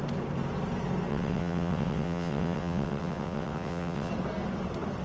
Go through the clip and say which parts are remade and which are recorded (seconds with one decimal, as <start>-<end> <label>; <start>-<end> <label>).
0.0-1.1 recorded; 1.1-4.1 remade; 4.1-5.0 recorded